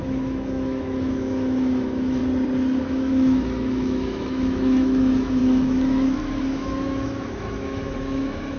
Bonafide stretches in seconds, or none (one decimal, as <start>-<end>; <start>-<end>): 2.2-2.8